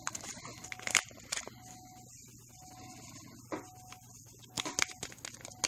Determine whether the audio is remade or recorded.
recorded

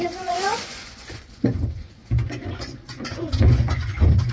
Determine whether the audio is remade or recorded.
remade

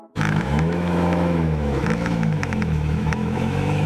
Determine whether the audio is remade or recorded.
remade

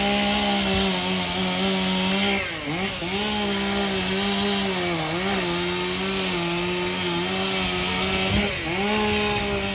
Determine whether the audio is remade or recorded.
recorded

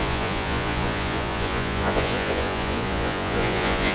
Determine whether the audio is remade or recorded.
remade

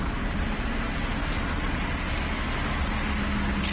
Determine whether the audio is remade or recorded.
recorded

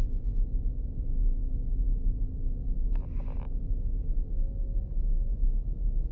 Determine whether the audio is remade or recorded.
recorded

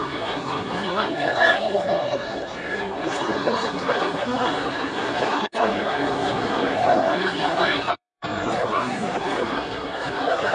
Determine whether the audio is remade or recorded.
remade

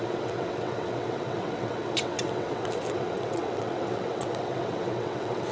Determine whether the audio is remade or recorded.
remade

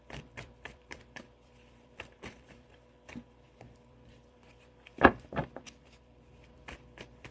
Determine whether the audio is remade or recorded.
remade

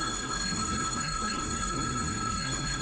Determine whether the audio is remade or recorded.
remade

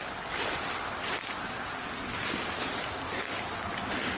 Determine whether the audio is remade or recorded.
recorded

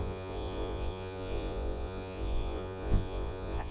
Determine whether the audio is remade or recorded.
remade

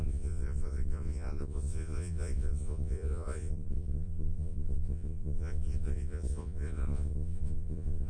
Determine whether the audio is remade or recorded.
remade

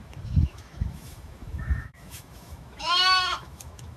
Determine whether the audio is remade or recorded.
remade